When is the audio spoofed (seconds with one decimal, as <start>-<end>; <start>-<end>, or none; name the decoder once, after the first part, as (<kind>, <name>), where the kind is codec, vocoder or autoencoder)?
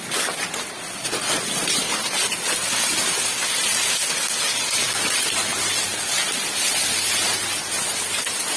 5.5-6.1 (vocoder, BigVGAN v2)